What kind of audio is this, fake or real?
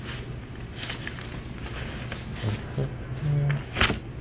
real